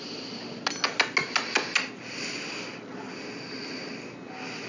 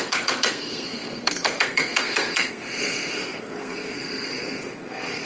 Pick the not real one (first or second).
second